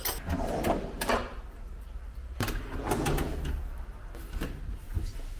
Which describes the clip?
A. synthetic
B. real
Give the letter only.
B